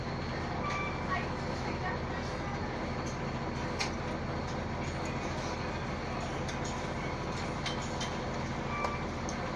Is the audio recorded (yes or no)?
yes